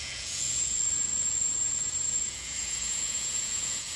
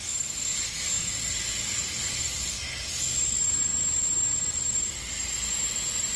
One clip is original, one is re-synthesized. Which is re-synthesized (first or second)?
first